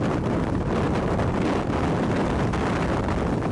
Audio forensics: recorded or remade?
recorded